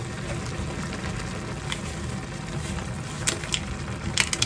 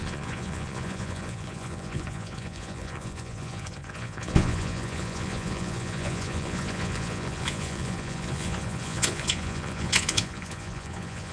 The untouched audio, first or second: first